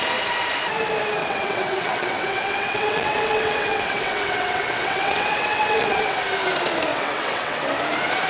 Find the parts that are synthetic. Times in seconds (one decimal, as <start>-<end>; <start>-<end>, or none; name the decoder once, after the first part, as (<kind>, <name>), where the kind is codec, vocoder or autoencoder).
1.2-6.2 (vocoder, WaveNeXt); 6.9-7.7